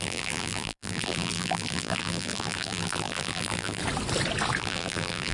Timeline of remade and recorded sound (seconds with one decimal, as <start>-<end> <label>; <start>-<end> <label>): 0.0-3.8 remade; 3.8-4.6 recorded; 4.6-5.3 remade